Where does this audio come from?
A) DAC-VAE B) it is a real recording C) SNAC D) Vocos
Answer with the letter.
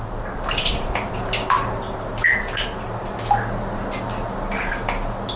B